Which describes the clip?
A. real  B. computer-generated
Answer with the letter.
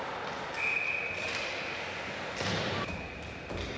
A